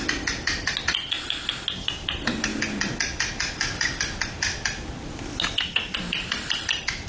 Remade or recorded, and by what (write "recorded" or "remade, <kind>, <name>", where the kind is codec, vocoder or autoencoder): recorded